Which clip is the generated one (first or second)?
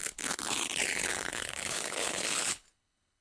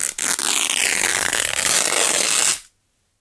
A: first